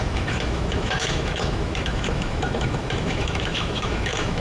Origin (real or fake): fake